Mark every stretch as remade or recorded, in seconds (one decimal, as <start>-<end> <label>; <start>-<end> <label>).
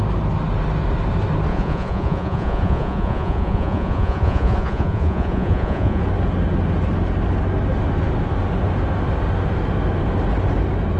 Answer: 0.0-1.5 recorded; 1.5-6.0 remade; 6.0-11.0 recorded